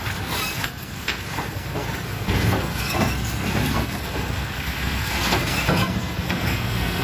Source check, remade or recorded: remade